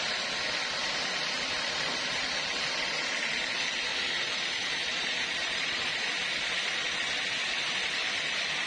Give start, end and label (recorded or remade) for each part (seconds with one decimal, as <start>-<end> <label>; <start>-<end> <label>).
0.0-3.9 recorded; 3.9-6.0 remade; 6.0-8.7 recorded